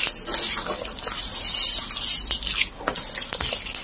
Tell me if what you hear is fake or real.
real